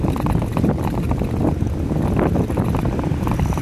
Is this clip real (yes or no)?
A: yes